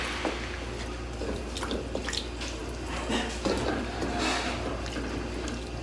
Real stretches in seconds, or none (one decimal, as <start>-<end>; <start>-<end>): 0.0-5.8